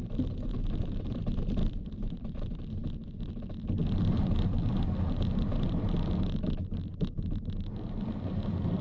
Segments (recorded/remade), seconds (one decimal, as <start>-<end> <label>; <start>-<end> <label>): 0.0-1.6 recorded; 1.6-2.4 remade; 2.4-8.8 recorded